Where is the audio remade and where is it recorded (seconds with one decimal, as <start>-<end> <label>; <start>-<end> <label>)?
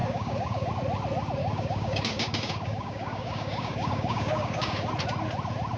0.0-0.7 remade; 0.7-1.4 recorded; 1.4-4.9 remade; 4.9-5.8 recorded